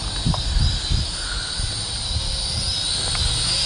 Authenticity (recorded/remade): recorded